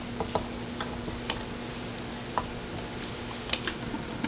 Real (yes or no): yes